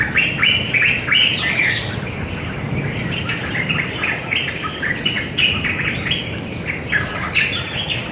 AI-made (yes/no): no